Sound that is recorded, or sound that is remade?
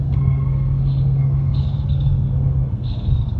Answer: remade